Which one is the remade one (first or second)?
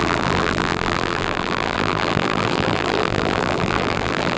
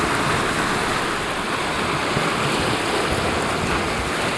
first